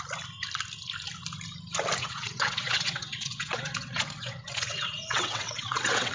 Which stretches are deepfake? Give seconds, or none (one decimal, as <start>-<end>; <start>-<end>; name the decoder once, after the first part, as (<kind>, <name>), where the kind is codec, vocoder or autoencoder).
2.0-6.1 (vocoder, WaveNeXt)